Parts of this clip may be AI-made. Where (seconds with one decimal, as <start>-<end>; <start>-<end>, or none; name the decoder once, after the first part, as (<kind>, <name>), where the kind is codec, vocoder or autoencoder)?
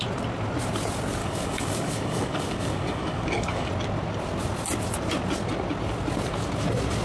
1.2-3.7 (codec, DAC)